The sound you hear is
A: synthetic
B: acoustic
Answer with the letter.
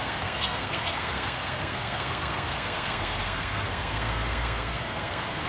A